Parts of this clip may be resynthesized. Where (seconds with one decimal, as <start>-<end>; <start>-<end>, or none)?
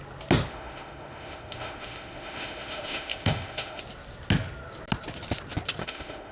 0.5-3.8; 5.8-6.3